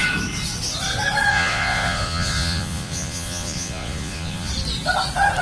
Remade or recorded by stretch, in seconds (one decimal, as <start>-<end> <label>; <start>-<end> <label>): 0.0-1.3 recorded; 1.3-4.5 remade; 4.5-5.4 recorded